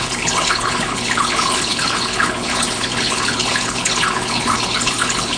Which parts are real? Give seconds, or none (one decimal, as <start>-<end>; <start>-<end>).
none